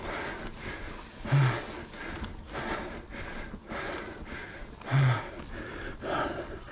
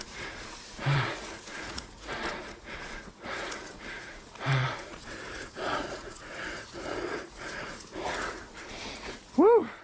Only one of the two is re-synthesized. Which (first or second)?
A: second